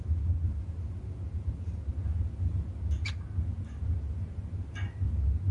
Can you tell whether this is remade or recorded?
recorded